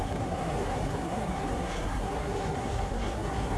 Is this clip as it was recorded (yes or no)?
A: no